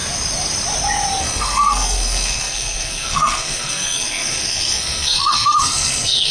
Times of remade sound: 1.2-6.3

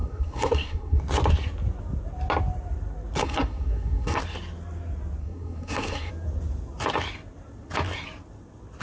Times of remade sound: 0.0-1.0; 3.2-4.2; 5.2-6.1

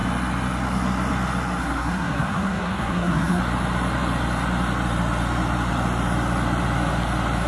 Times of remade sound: 1.6-3.4

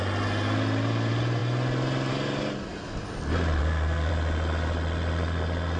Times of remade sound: 3.6-4.1